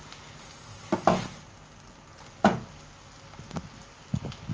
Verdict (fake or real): real